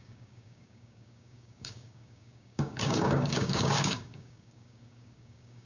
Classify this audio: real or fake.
fake